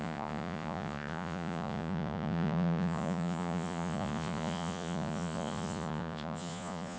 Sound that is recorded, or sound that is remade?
remade